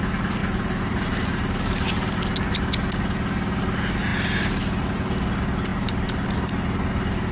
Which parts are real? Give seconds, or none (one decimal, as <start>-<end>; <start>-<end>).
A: 0.0-0.4; 2.2-5.7; 6.3-7.3